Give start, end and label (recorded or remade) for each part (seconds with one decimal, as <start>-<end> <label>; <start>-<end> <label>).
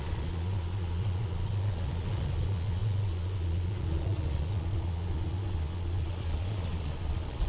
0.0-7.5 remade